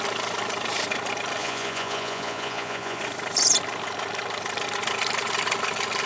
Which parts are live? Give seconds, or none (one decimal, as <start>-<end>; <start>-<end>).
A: 0.0-1.4; 3.0-6.1